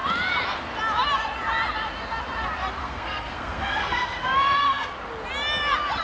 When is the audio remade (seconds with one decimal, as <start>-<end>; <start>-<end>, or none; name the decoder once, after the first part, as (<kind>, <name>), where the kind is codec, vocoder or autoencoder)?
2.8-4.9 (codec, SNAC)